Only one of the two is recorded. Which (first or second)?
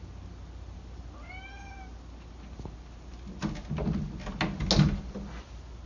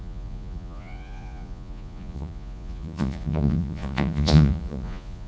first